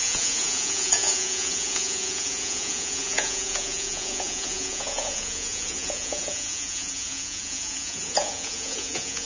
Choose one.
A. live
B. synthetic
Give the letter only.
B